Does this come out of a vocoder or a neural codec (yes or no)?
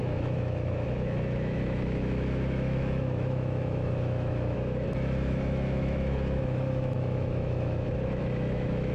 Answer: yes